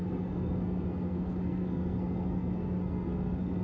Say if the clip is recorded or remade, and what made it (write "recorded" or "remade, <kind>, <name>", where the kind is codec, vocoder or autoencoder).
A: remade, codec, SNAC